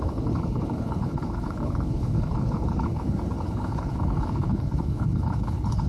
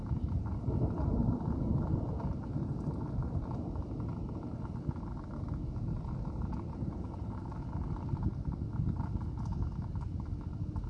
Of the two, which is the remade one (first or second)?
first